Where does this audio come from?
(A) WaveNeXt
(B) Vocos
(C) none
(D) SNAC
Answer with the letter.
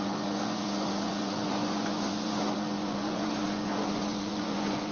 B